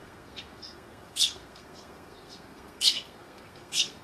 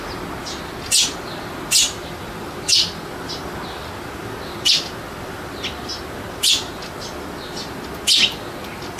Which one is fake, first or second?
first